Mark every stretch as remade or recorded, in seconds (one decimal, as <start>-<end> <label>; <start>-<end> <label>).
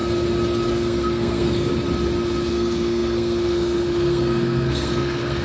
0.0-0.7 recorded; 0.7-1.7 remade; 1.7-2.5 recorded; 2.5-5.4 remade